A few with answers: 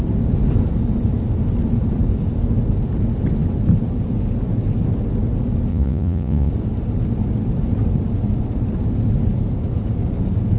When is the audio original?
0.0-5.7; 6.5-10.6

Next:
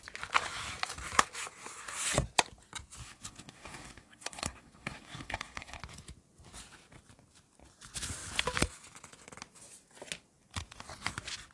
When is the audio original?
0.0-3.0; 5.8-11.5

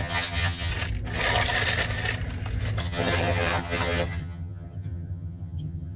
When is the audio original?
0.7-2.8